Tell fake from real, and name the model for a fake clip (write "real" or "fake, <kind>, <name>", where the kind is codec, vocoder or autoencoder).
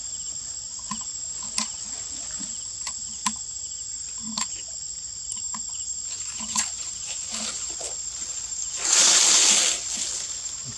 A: real